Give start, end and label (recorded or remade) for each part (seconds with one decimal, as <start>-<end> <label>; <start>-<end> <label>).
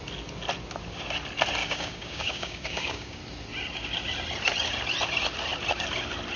0.0-1.6 recorded; 1.6-3.2 remade; 3.2-6.4 recorded